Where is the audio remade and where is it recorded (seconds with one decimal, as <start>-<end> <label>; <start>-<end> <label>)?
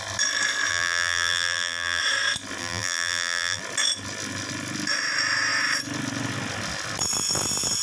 0.0-0.7 recorded; 0.7-2.0 remade; 2.0-2.6 recorded; 2.6-3.6 remade; 3.6-7.8 recorded